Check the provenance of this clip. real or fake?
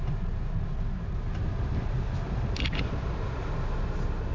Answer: real